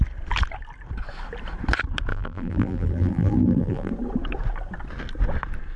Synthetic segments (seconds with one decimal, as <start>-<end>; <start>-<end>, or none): 2.1-3.9